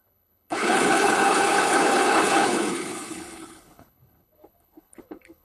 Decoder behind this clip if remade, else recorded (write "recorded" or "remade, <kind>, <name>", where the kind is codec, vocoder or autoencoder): remade, codec, HILCodec